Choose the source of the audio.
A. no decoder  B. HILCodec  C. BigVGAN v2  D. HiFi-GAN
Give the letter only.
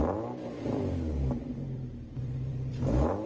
C